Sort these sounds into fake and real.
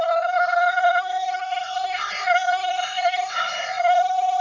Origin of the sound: fake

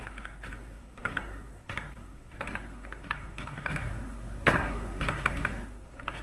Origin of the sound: fake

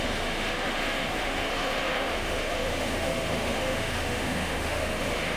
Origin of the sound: fake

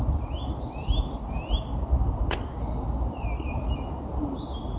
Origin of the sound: real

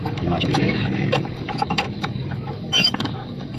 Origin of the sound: fake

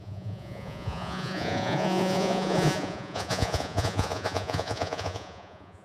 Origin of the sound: fake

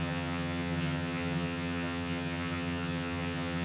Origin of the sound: fake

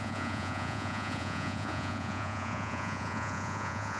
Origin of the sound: fake